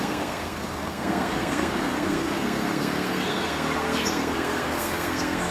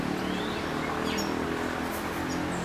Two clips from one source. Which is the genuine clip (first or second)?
second